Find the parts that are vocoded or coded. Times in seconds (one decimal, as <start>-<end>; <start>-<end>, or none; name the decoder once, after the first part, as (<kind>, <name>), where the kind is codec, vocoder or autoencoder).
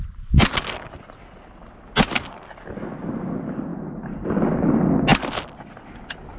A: none